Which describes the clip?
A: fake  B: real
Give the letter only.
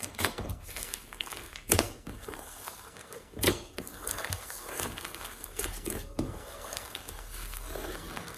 A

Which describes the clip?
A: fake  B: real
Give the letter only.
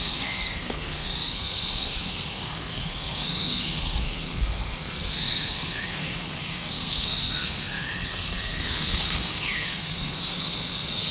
A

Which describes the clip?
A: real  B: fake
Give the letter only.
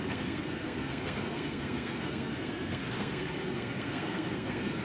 B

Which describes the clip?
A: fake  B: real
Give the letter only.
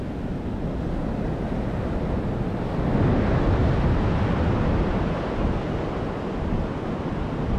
B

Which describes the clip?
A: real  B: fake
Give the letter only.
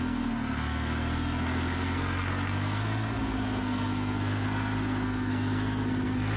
B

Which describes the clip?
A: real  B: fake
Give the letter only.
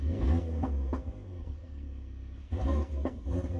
B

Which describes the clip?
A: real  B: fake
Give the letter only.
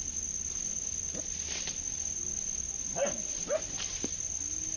A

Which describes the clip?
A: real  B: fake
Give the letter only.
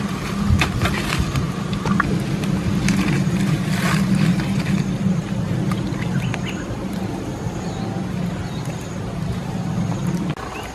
A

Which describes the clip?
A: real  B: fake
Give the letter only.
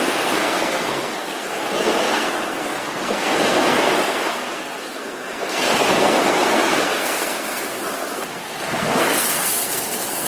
B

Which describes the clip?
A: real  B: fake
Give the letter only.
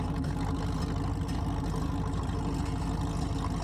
A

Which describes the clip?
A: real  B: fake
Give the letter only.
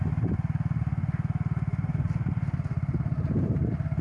A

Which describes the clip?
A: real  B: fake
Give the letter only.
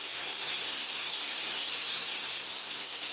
B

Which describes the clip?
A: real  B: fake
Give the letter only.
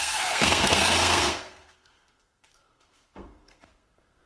B